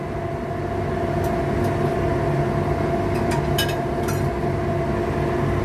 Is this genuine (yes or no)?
yes